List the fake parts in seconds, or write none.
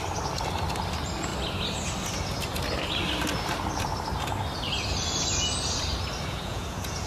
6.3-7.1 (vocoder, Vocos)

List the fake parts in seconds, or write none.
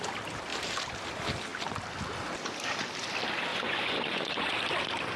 3.5-4.5 (vocoder, Vocos)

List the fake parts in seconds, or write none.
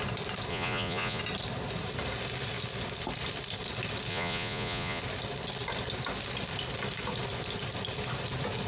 0.5-1.2 (vocoder, Vocos); 4.1-5.0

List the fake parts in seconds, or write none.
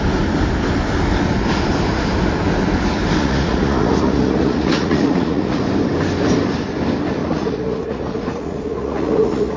3.2-5.6 (vocoder, Vocos); 7.2-9.6